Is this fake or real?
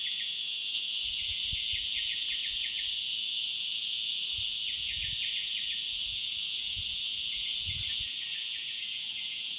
fake